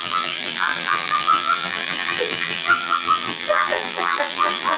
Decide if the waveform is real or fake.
fake